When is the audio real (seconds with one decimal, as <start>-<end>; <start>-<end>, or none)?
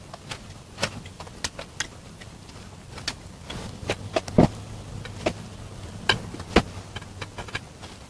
0.0-8.1